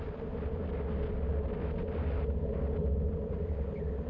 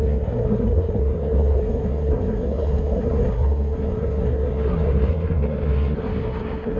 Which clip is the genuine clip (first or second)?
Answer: first